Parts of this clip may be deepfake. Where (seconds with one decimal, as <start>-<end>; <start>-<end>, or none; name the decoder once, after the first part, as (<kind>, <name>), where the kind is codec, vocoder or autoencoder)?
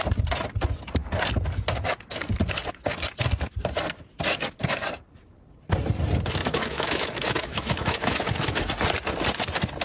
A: 6.4-8.6 (autoencoder, DAC-VAE)